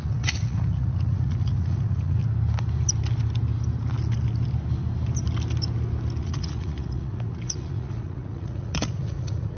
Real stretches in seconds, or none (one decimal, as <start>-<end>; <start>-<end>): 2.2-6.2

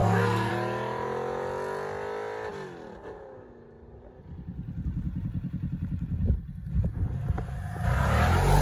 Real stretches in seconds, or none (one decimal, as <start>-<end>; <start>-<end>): 0.5-8.6

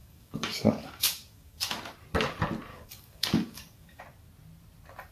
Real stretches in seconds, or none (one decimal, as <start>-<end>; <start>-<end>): 1.6-2.7; 4.0-5.1